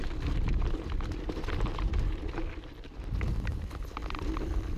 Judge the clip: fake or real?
real